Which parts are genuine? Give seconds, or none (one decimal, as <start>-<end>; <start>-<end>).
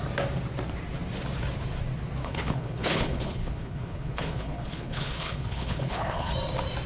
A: 0.0-2.2; 6.3-6.9